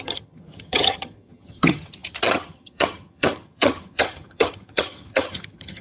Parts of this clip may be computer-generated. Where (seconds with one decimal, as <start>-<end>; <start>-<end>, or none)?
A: 0.0-5.8